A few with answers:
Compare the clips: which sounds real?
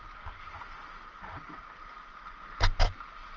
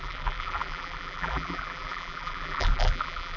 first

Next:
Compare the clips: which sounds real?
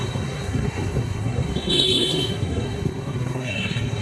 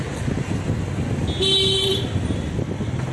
second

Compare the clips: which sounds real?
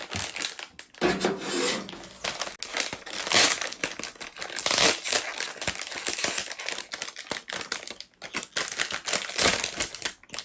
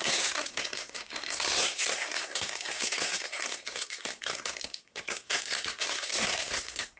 first